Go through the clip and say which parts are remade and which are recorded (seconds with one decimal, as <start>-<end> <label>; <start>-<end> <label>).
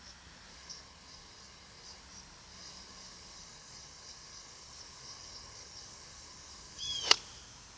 0.0-0.5 recorded; 0.5-2.0 remade; 2.0-2.5 recorded; 2.5-7.0 remade; 7.0-7.8 recorded